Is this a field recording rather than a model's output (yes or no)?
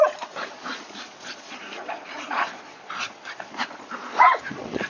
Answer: no